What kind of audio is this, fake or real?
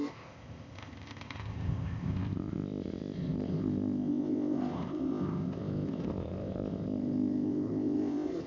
fake